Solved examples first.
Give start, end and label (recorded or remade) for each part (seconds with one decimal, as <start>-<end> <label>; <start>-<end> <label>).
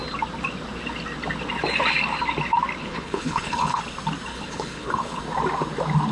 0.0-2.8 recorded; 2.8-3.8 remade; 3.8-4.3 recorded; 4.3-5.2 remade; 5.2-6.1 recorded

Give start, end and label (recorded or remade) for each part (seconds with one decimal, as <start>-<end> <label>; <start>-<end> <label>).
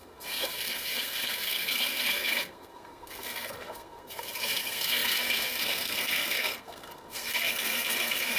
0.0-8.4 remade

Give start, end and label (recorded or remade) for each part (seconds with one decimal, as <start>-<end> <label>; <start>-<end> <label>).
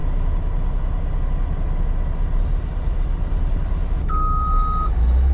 0.0-5.3 recorded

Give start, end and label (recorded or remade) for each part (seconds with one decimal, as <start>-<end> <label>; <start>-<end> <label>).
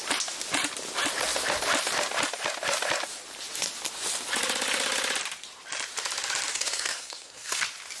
0.0-6.5 recorded; 6.5-7.6 remade; 7.6-8.0 recorded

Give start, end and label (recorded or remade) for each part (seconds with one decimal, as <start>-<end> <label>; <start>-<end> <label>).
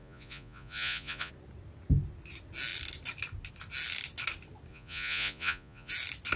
0.0-1.3 remade; 1.3-4.7 recorded; 4.7-5.9 remade; 5.9-6.4 recorded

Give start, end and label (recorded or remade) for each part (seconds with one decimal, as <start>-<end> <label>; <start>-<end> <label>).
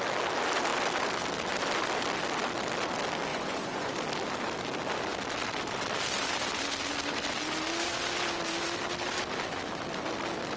0.0-3.3 recorded; 3.3-3.9 remade; 3.9-10.6 recorded